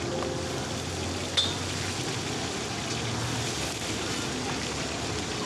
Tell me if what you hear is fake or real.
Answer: real